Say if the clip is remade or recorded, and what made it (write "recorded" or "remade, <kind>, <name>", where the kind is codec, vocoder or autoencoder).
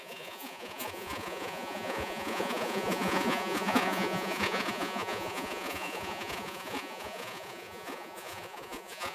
remade, vocoder, Vocos